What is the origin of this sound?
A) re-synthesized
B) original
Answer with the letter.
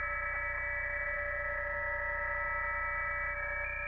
B